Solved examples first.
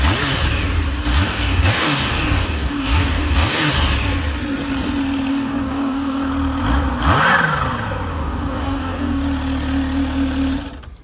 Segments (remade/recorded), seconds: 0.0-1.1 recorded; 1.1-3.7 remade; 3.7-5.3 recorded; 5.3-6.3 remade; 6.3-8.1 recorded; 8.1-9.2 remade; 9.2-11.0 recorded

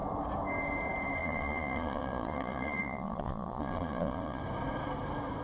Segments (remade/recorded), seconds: 0.0-1.2 recorded; 1.2-4.4 remade; 4.4-5.4 recorded

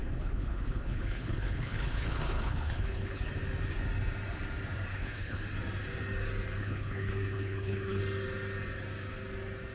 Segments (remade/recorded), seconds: 0.0-3.2 remade; 3.2-4.9 recorded; 4.9-5.4 remade; 5.4-6.6 recorded; 6.6-8.0 remade; 8.0-9.7 recorded

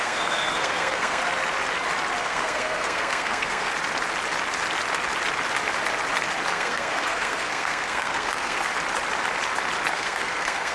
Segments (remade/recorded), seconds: 0.0-1.2 remade; 1.2-2.2 recorded; 2.2-3.7 remade; 3.7-6.5 recorded; 6.5-8.7 remade; 8.7-9.9 recorded; 9.9-10.7 remade